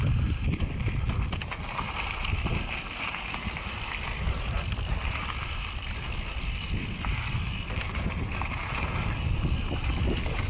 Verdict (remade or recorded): recorded